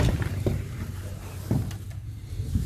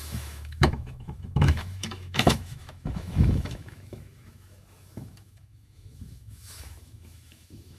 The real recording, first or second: first